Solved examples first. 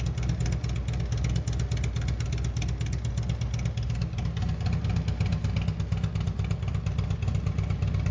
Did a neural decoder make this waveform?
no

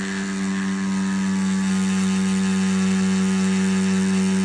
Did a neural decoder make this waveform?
no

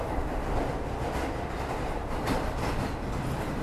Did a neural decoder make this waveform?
no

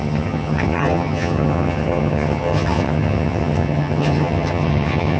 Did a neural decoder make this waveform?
yes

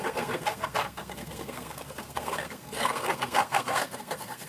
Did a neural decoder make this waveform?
yes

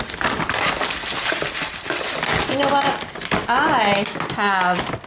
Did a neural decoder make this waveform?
no